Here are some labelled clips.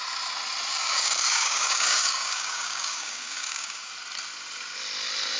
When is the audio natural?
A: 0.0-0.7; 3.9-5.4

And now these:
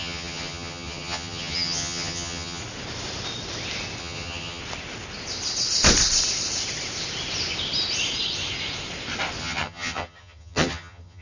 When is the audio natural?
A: 2.6-4.0; 4.6-9.4

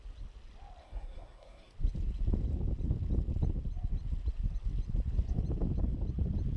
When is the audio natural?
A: 0.0-0.8; 1.7-6.6